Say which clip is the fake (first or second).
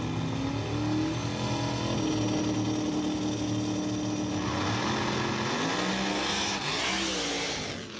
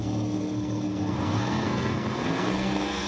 second